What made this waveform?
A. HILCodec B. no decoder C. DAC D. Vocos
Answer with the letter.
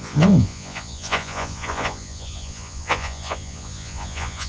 D